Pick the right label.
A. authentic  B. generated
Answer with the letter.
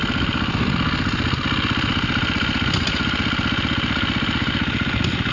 A